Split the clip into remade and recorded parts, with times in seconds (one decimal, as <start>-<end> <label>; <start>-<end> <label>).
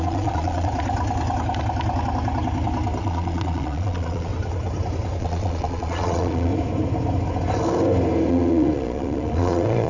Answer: 0.0-0.7 remade; 0.7-3.0 recorded; 3.0-4.3 remade; 4.3-5.2 recorded; 5.2-6.5 remade; 6.5-8.3 recorded; 8.3-9.9 remade